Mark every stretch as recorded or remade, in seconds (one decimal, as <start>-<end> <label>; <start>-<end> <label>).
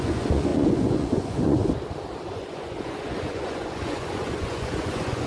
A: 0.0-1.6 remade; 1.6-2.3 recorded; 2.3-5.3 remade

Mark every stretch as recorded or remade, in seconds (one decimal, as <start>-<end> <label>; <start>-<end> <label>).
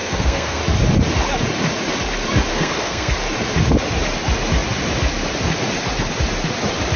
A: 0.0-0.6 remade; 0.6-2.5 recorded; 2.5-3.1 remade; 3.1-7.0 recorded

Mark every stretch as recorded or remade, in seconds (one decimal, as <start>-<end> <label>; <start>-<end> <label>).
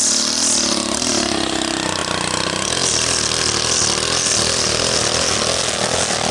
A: 0.0-6.3 recorded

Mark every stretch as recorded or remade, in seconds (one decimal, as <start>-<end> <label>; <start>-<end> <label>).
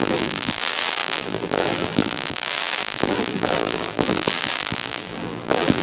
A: 0.0-5.8 remade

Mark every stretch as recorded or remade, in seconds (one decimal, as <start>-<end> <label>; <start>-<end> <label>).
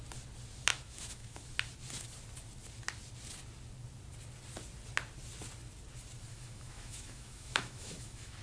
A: 0.0-0.7 recorded; 0.7-1.5 remade; 1.5-6.3 recorded; 6.3-8.4 remade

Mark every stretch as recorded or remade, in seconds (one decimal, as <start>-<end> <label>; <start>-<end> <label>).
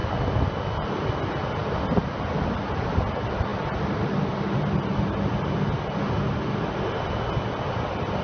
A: 0.0-8.2 recorded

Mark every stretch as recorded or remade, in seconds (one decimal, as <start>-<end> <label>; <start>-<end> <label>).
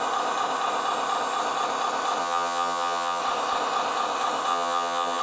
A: 0.0-2.2 recorded; 2.2-3.2 remade; 3.2-4.5 recorded; 4.5-5.2 remade